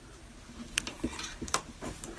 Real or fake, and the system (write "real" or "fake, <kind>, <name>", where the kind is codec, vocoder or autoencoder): fake, vocoder, BigVGAN v2